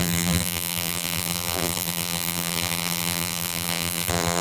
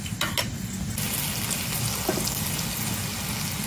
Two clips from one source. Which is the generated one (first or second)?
first